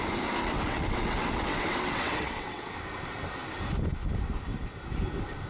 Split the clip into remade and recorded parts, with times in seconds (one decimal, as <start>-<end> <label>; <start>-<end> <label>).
0.0-0.4 recorded; 0.4-2.7 remade; 2.7-5.5 recorded